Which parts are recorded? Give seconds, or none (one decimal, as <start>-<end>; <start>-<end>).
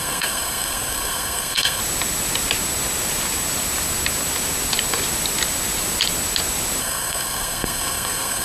1.8-6.8